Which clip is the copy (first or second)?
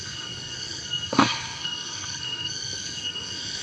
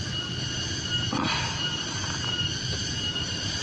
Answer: first